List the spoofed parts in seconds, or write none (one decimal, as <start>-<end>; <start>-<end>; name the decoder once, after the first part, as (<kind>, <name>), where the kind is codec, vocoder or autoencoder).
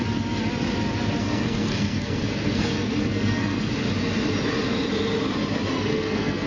1.2-3.7 (codec, SNAC); 5.7-6.5